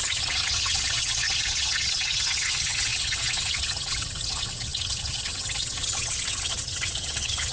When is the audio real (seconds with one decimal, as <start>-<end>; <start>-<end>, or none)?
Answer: none